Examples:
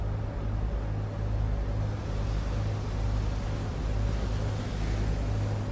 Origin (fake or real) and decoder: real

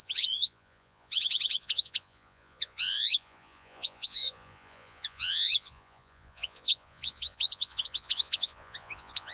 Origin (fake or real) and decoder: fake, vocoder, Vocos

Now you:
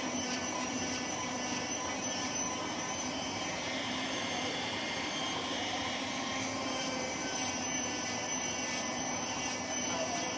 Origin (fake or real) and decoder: fake, vocoder, BigVGAN v2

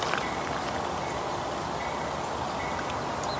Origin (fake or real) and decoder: real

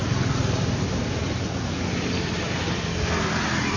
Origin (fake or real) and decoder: real